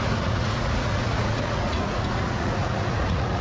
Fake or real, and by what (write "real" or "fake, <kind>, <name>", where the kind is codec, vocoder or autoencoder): fake, vocoder, Vocos